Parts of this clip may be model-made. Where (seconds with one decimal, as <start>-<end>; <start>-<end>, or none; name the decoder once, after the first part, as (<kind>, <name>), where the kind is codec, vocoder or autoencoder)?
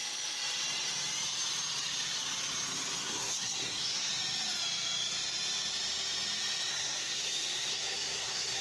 3.0-4.1 (codec, SNAC); 6.7-8.6